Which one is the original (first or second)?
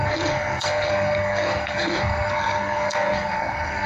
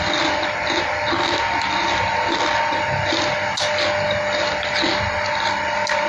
second